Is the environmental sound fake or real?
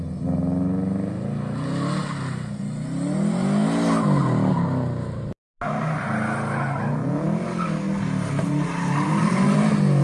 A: real